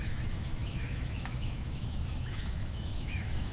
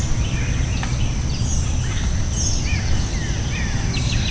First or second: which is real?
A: second